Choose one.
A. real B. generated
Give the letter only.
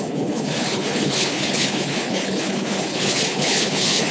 B